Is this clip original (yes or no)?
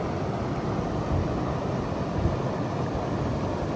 yes